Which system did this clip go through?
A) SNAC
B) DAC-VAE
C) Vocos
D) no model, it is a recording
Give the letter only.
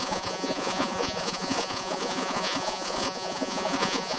C